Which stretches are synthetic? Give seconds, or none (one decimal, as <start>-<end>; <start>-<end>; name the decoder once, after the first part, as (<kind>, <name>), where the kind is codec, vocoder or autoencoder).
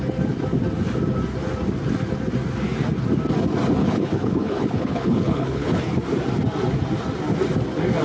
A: 3.8-5.8 (codec, HILCodec)